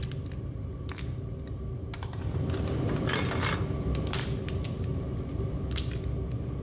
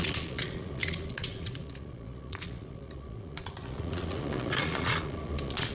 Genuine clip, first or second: first